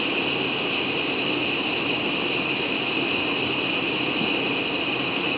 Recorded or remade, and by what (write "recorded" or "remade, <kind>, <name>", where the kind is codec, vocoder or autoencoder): recorded